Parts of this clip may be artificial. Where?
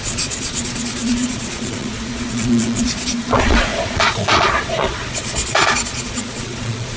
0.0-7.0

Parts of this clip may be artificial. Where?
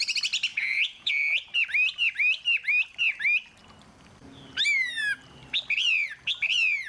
0.5-1.1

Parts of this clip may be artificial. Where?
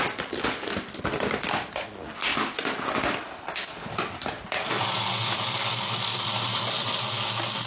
none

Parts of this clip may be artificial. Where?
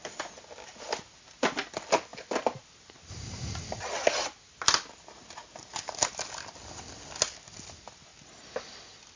none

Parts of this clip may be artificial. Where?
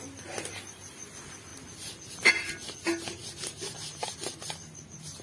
none